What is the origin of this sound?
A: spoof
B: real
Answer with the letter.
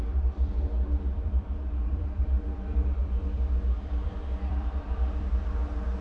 A